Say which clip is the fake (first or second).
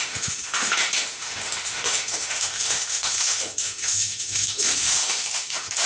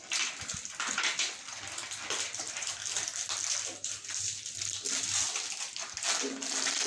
first